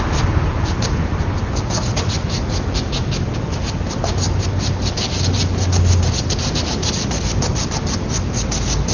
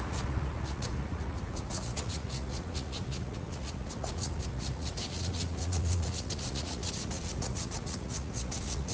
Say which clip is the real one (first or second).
first